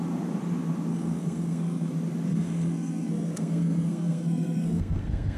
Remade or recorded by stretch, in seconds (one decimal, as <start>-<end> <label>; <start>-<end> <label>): 0.0-0.9 recorded; 0.9-1.9 remade; 1.9-2.3 recorded; 2.3-5.4 remade